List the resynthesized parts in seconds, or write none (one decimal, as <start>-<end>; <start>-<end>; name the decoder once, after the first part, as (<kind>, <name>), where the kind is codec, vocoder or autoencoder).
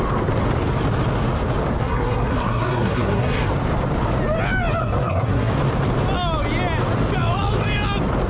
1.8-3.5 (codec, SNAC); 4.8-5.5